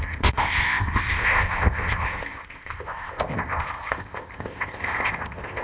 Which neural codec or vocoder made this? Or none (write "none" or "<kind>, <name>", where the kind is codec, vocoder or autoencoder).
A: codec, ZipCodec